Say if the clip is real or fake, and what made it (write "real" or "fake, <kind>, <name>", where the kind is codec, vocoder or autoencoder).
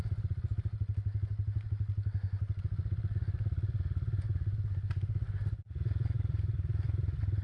real